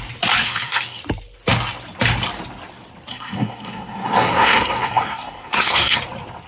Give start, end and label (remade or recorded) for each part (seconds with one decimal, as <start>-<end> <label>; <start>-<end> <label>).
0.0-0.4 recorded; 0.4-1.0 remade; 1.0-3.1 recorded; 3.1-6.0 remade; 6.0-6.5 recorded